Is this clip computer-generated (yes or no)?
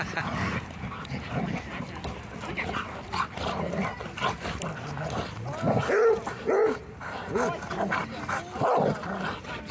no